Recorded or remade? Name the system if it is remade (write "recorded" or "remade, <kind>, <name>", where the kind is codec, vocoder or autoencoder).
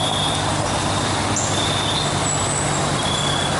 recorded